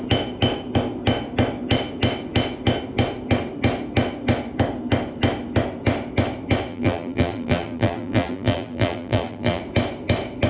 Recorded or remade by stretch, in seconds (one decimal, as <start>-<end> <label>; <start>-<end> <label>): 0.0-6.7 recorded; 6.7-9.6 remade; 9.6-10.5 recorded